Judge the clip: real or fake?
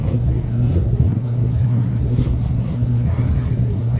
fake